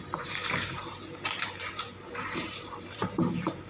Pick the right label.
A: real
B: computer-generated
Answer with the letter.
B